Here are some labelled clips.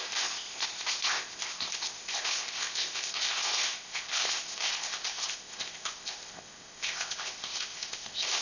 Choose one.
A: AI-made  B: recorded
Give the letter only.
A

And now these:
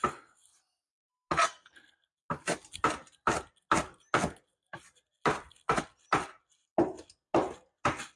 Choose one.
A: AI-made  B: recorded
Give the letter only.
B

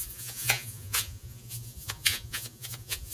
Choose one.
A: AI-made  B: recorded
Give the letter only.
A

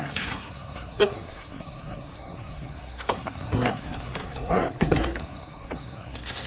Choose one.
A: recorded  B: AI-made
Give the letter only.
B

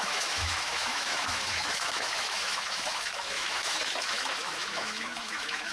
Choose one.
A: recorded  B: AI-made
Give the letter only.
B